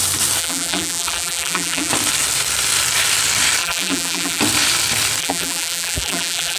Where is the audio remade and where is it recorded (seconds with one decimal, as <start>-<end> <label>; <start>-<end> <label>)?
0.0-0.4 recorded; 0.4-1.9 remade; 1.9-3.6 recorded; 3.6-4.4 remade; 4.4-5.2 recorded; 5.2-6.6 remade